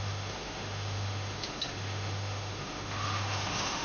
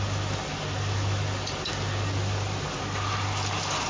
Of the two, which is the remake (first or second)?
first